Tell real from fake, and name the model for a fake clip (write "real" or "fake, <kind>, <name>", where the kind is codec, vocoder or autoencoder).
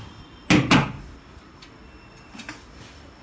real